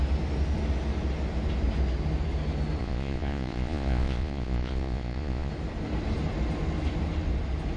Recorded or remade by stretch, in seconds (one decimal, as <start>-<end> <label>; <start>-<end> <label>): 0.0-2.8 recorded; 2.8-5.5 remade; 5.5-7.8 recorded